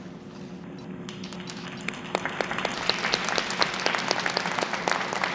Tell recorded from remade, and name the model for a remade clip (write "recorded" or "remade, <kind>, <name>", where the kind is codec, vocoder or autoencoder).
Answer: recorded